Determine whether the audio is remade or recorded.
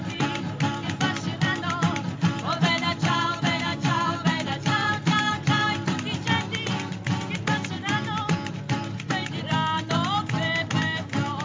remade